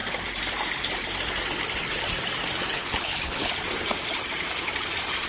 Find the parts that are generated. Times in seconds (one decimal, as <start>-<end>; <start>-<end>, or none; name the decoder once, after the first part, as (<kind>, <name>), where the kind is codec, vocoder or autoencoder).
2.7-3.5 (codec, HILCodec)

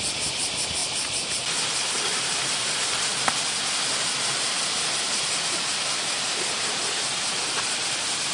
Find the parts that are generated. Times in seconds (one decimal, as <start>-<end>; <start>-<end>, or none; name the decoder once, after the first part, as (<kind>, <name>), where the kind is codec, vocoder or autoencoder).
0.8-1.4 (vocoder, BigVGAN v2)